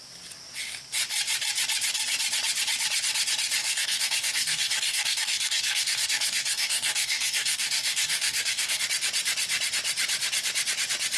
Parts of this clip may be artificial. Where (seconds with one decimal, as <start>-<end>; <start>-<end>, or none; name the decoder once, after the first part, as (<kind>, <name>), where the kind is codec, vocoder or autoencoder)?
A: 3.6-8.8 (codec, DAC)